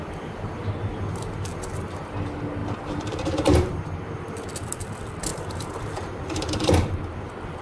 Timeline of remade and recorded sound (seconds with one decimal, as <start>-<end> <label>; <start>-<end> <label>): 0.0-2.6 recorded; 2.6-4.1 remade; 4.1-5.3 recorded; 5.3-6.7 remade; 6.7-7.6 recorded